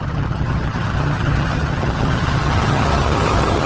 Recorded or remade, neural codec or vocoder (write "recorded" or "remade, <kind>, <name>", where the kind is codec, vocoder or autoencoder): remade, vocoder, HiFi-GAN